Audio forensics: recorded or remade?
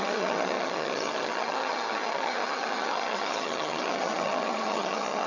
remade